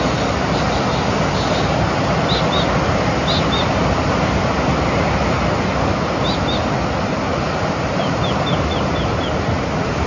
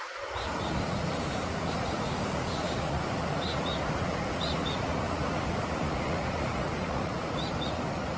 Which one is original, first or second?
first